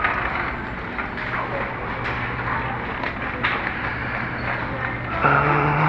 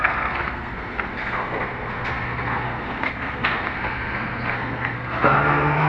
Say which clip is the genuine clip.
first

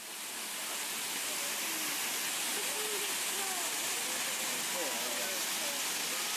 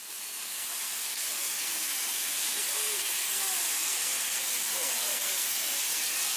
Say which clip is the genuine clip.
first